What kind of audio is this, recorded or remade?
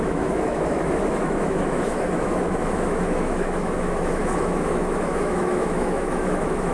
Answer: remade